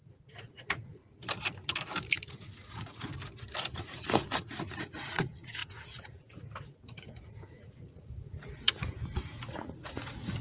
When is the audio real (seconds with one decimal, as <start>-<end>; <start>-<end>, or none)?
1.0-2.3; 3.1-3.8